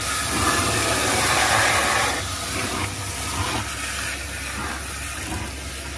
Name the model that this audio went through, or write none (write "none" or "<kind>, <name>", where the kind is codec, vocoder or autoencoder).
none